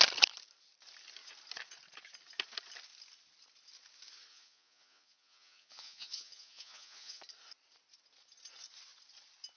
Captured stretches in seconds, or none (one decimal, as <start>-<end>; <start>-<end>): 0.0-4.3; 7.2-9.6

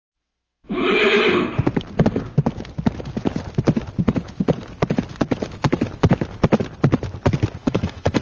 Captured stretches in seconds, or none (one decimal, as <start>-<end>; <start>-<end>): 0.8-7.6

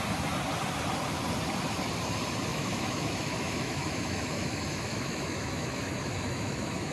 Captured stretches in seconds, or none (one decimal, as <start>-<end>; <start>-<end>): 0.0-2.5

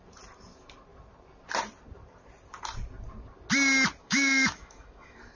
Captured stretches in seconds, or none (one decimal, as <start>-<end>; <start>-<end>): 0.0-4.0

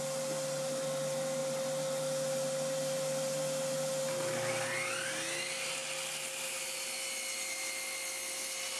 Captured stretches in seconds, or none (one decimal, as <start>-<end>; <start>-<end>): 0.0-8.8

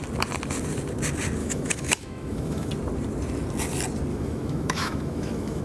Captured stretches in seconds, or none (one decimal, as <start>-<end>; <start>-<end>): 0.0-1.4; 2.7-4.1